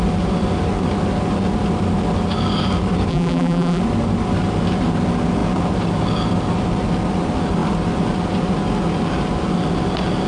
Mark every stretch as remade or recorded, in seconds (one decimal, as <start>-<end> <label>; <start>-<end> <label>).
0.0-3.1 recorded; 3.1-3.8 remade; 3.8-10.3 recorded